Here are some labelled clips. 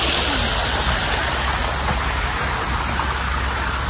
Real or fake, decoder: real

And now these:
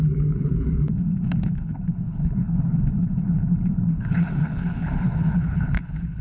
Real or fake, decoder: fake, codec, HILCodec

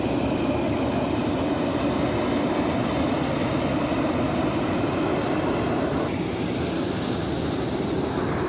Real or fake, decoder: real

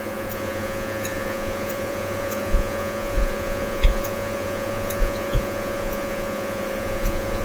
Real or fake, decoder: fake, vocoder, Vocos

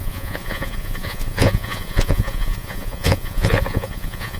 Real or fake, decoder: fake, vocoder, Vocos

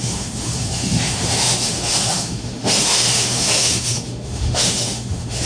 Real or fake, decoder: fake, autoencoder, DAC-VAE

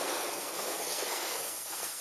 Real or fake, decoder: fake, codec, SNAC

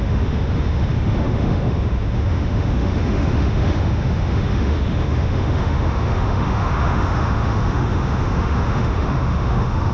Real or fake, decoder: fake, autoencoder, DAC-VAE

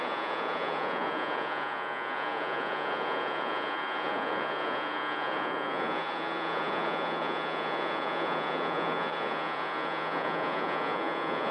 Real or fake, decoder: fake, vocoder, Vocos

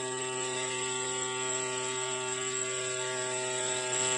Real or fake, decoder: real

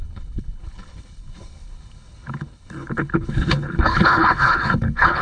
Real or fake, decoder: fake, codec, HILCodec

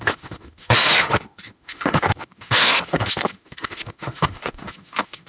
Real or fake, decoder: fake, autoencoder, DAC-VAE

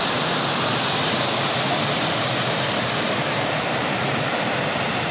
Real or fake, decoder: real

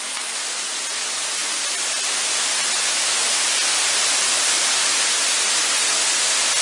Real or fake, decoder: real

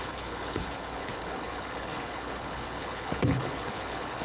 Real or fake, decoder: fake, codec, HILCodec